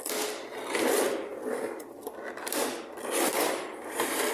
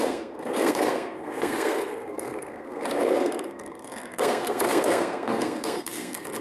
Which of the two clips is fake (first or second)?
second